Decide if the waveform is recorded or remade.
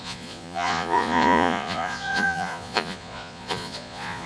remade